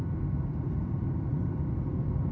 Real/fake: real